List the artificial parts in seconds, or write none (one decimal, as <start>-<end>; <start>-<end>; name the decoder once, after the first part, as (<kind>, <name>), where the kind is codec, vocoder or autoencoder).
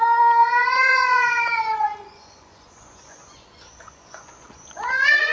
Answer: 0.0-5.3 (vocoder, Vocos)